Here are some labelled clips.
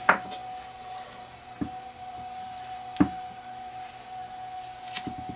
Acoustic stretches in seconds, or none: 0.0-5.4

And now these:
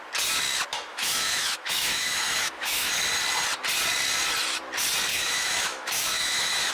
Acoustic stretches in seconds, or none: 0.0-0.9; 2.9-5.1

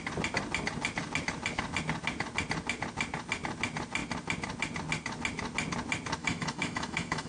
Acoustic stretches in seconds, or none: 0.0-6.2

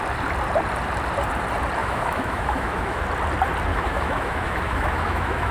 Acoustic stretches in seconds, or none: 0.0-1.8; 3.0-3.7

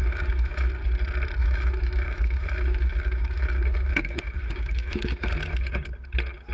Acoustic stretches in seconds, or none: 0.7-1.4; 5.3-6.5